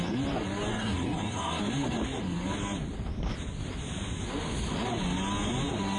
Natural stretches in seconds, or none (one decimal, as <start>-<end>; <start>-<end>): 0.0-0.7; 1.6-6.0